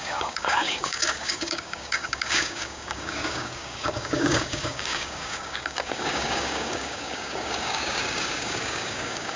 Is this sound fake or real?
fake